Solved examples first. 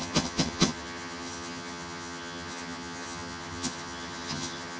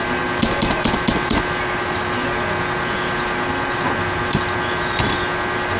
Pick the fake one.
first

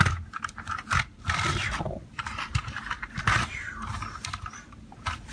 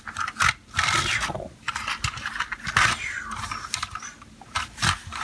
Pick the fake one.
first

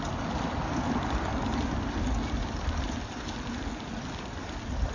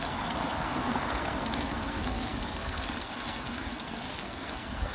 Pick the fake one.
second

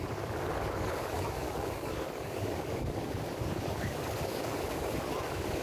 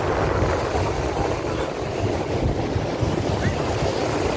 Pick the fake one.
first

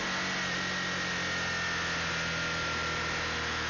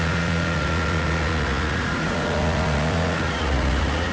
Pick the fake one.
second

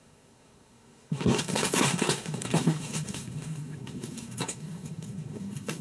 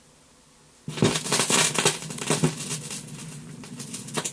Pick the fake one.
first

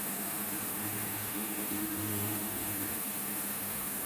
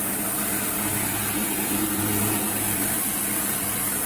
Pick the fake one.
first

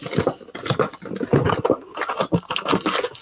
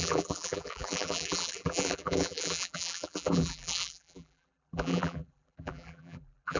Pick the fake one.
second